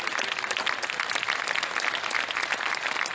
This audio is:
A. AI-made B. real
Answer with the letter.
B